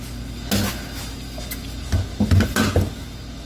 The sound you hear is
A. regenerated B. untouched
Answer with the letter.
B